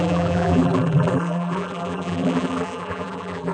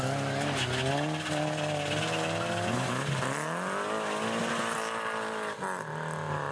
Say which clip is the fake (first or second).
first